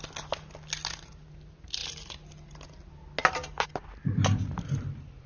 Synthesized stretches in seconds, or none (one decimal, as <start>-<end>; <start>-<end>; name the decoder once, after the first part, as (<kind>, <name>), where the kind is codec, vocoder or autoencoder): none